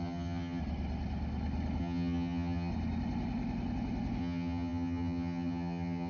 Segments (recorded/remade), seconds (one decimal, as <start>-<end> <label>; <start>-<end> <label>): 0.0-0.6 remade; 0.6-1.8 recorded; 1.8-2.7 remade; 2.7-4.2 recorded; 4.2-6.1 remade